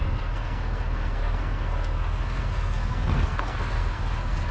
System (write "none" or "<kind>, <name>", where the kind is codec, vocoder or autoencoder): codec, SNAC